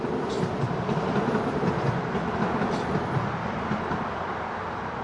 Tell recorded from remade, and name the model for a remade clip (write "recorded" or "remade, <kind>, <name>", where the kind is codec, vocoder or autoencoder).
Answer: recorded